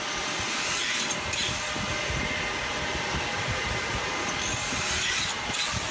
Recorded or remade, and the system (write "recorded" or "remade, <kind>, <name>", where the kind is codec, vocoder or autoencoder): recorded